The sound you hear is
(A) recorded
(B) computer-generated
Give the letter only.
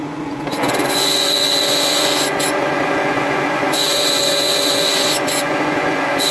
B